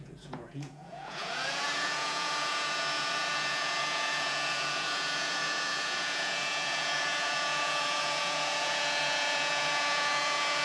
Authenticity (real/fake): fake